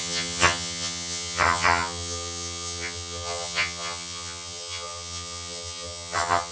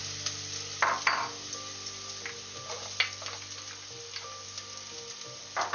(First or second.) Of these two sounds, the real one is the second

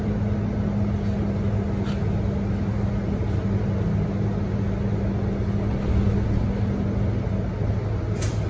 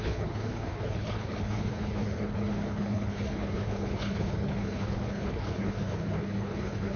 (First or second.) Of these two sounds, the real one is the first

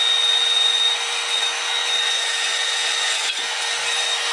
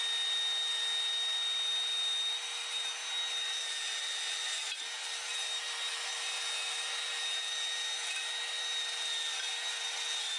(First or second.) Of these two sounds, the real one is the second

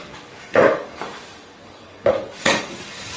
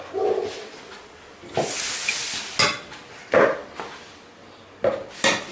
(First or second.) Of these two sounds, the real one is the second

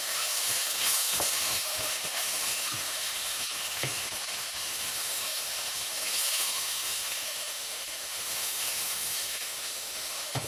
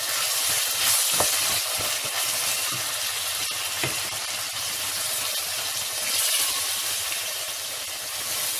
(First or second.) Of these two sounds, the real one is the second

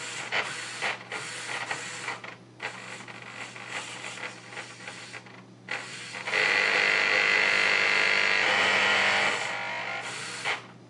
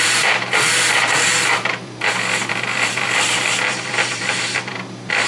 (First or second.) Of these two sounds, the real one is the first